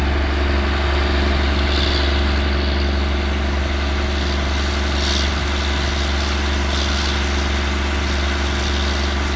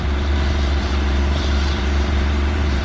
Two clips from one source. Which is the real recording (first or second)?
first